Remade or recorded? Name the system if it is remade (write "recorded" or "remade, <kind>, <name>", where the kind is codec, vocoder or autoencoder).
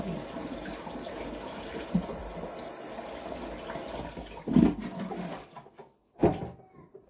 recorded